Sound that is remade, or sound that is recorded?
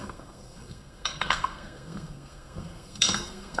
remade